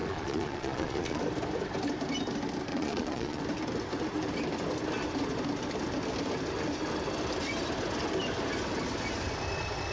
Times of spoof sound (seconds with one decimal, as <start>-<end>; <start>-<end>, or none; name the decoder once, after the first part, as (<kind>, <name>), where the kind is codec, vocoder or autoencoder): 0.0-1.2 (vocoder, Vocos); 2.7-3.4